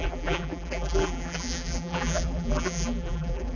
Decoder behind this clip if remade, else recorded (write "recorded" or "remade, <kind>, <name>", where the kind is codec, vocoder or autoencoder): remade, vocoder, BigVGAN v2